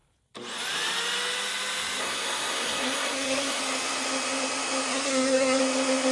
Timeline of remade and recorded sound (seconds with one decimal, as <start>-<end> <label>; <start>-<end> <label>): 0.0-2.0 recorded; 2.0-3.6 remade; 3.6-4.9 recorded; 4.9-5.6 remade; 5.6-6.1 recorded